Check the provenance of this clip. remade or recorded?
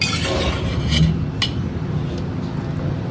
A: recorded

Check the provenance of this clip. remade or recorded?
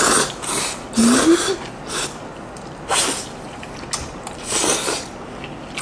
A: recorded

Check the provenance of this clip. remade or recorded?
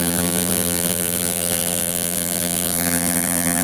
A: remade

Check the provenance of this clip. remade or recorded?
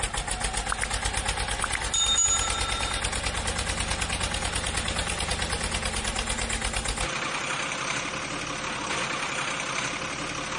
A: recorded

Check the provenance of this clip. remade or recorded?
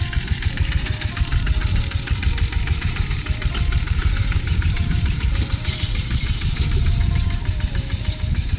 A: remade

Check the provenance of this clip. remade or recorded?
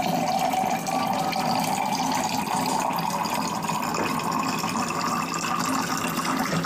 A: recorded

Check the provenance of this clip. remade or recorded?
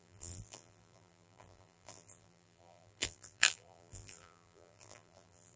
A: remade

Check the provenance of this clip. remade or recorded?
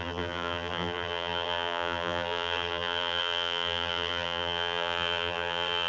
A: remade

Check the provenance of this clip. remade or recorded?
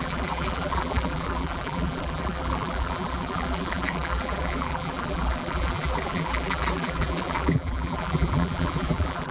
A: remade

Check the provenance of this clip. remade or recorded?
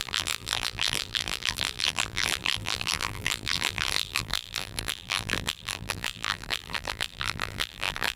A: remade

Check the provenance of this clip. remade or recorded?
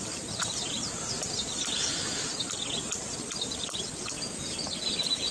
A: recorded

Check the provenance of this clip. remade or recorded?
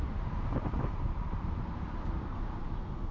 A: remade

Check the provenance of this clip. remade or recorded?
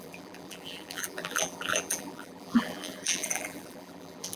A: remade